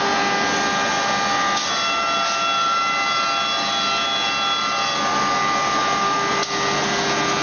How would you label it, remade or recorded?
recorded